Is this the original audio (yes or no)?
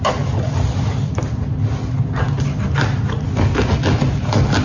yes